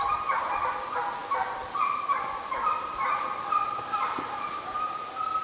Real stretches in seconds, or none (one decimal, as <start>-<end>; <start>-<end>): 0.0-5.4